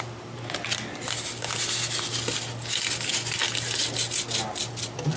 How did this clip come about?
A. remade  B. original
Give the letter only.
B